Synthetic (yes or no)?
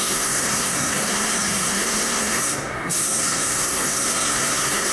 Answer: yes